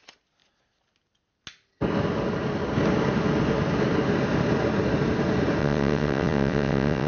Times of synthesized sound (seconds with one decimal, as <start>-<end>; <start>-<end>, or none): 5.6-7.1